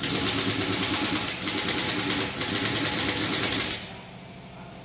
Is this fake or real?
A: real